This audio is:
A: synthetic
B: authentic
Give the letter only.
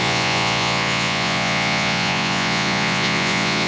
A